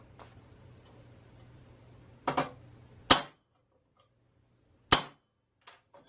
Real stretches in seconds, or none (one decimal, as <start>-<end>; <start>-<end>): 2.1-6.1